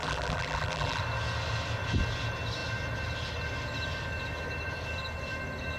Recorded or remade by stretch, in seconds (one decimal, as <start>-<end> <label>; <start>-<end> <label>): 0.0-1.0 remade; 1.0-5.8 recorded